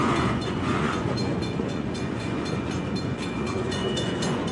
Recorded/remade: remade